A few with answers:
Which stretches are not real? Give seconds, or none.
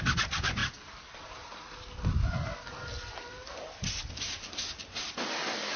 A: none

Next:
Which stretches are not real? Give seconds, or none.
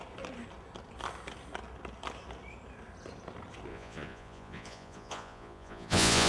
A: 3.7-6.3 (vocoder, Vocos)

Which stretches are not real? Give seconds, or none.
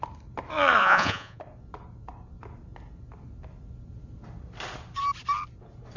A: 0.8-1.4 (vocoder, Vocos)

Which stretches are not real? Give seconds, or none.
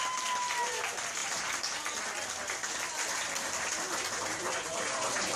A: none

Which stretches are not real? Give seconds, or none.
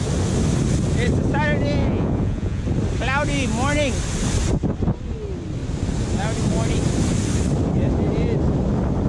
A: 1.8-2.6 (vocoder, Vocos)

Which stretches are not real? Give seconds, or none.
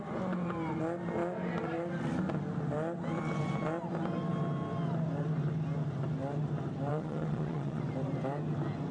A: 6.9-7.8 (vocoder, Vocos)